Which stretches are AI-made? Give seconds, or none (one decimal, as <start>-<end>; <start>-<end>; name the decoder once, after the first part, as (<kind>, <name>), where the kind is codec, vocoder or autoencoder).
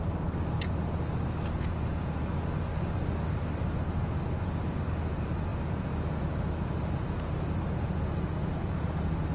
1.6-2.7 (vocoder, Vocos); 4.9-5.5; 6.1-9.3